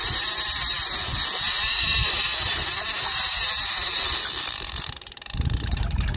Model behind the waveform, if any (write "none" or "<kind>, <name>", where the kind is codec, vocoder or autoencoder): vocoder, BigVGAN v2